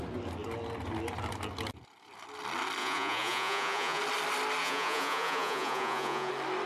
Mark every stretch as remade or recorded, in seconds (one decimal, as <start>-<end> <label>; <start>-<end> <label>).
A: 0.0-2.8 recorded; 2.8-4.0 remade; 4.0-4.6 recorded; 4.6-6.3 remade; 6.3-6.7 recorded